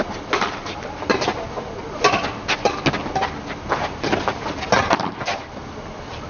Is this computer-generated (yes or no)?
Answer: no